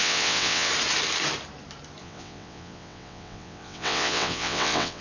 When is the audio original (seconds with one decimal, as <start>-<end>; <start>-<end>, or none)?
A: 0.7-2.0